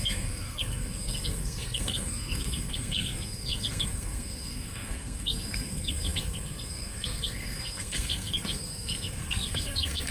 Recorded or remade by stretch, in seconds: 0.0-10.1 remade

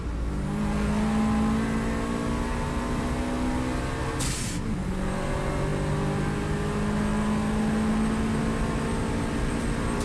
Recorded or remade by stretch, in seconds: 0.0-10.0 recorded

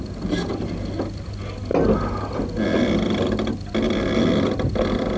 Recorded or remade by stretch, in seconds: 0.0-5.2 recorded

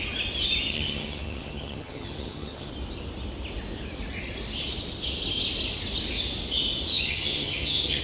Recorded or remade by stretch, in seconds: 0.0-0.7 recorded; 0.7-2.7 remade; 2.7-6.9 recorded; 6.9-8.0 remade

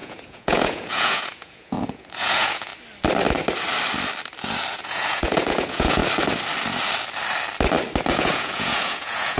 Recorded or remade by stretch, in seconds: 0.0-2.7 remade; 2.7-4.7 recorded; 4.7-6.0 remade; 6.0-8.1 recorded; 8.1-9.4 remade

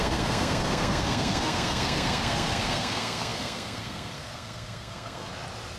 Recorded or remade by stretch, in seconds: 0.0-5.3 remade; 5.3-5.8 recorded

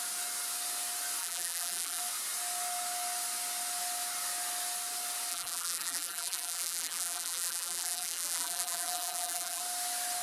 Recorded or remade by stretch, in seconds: 0.0-1.2 recorded; 1.2-2.0 remade; 2.0-5.3 recorded; 5.3-9.6 remade; 9.6-10.2 recorded